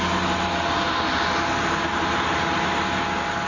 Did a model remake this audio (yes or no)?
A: no